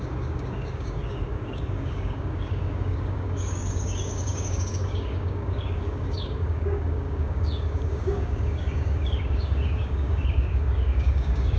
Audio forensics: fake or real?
fake